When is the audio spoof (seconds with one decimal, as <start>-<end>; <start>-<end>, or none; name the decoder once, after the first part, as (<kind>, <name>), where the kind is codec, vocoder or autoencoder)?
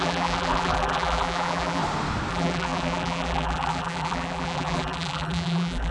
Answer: 0.0-1.8 (vocoder, BigVGAN v2); 2.3-5.9